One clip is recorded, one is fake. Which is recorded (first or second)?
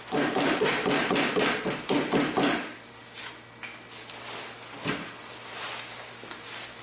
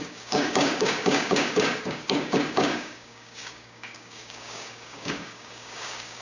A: first